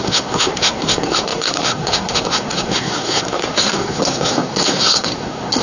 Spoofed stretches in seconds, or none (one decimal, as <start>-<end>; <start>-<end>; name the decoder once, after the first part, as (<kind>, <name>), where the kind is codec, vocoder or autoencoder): 0.0-5.6 (codec, SNAC)